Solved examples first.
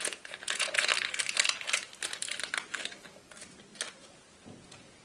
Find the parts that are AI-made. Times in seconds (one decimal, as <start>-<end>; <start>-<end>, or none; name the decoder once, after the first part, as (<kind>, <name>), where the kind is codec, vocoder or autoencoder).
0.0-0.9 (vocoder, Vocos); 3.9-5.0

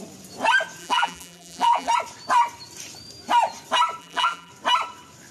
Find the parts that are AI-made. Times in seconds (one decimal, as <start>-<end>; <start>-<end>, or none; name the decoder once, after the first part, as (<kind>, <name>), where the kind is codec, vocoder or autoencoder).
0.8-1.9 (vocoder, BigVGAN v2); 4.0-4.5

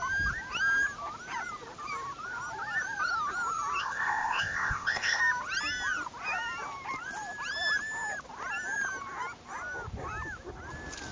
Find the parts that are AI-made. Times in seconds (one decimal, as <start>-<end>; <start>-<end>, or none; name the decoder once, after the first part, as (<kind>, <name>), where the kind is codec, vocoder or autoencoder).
3.8-5.2 (codec, ZipCodec)

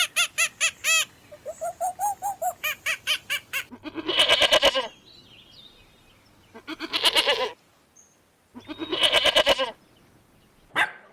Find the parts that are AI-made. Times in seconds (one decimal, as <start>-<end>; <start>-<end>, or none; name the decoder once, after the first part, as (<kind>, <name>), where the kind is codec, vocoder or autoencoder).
6.7-7.7 (vocoder, BigVGAN v2)